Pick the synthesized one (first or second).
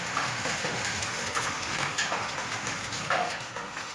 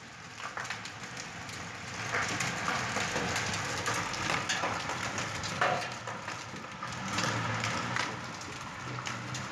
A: first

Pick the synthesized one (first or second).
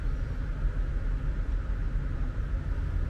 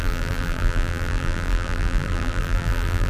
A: second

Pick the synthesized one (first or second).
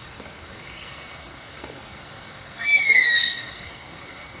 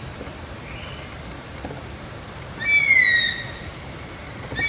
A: first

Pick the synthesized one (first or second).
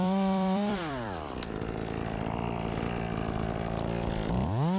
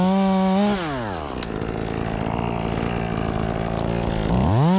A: first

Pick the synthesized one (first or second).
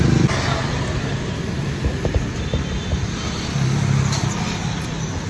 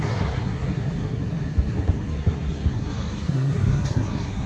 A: second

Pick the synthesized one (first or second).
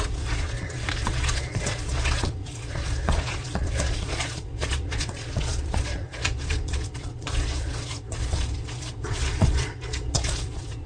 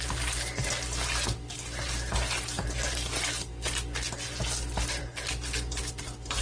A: first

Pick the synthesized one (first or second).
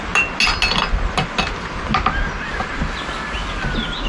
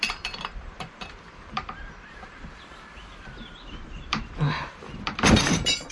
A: second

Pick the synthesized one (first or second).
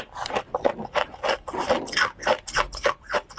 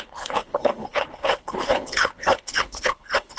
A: second